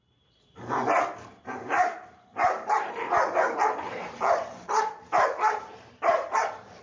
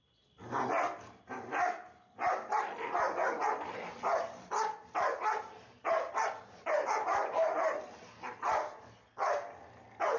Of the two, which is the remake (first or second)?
first